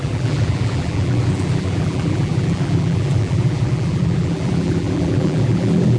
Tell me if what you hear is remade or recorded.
remade